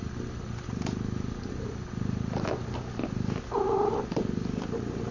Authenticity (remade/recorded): recorded